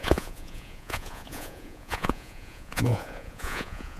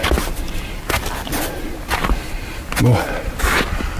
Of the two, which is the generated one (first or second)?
first